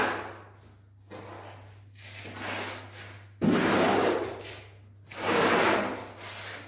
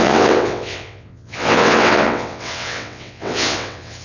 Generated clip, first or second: second